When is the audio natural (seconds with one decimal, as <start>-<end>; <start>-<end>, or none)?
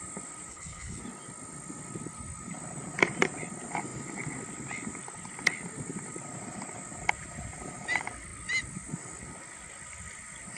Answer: 0.0-0.5; 1.0-10.6